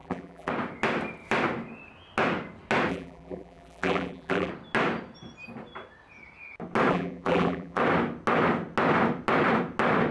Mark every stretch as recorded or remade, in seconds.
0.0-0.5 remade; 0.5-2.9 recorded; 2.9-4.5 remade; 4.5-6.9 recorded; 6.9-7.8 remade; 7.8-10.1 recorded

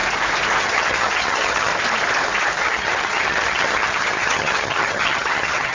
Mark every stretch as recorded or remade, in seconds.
0.0-0.6 recorded; 0.6-1.7 remade; 1.7-2.6 recorded; 2.6-5.7 remade

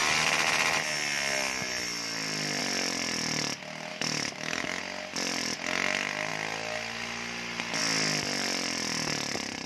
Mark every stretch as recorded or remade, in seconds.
0.0-3.9 recorded; 3.9-4.8 remade; 4.8-9.7 recorded

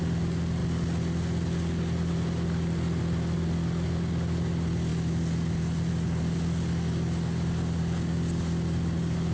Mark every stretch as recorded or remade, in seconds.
0.0-9.3 recorded

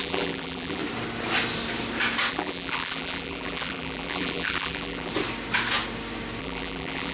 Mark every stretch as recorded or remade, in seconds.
0.0-0.8 remade; 0.8-2.3 recorded; 2.3-5.1 remade; 5.1-6.4 recorded; 6.4-7.1 remade

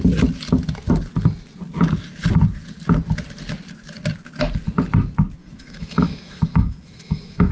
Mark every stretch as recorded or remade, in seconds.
0.0-5.4 recorded; 5.4-7.5 remade